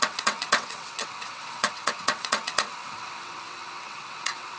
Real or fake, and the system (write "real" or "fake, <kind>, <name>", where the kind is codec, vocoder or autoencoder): fake, vocoder, WaveNeXt